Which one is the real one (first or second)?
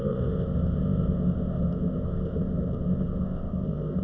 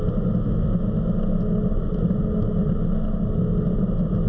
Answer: second